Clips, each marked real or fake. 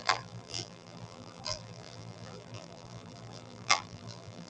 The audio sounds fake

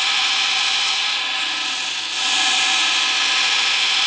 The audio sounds real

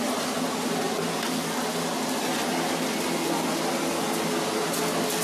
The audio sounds real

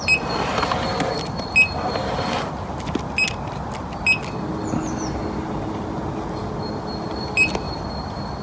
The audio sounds real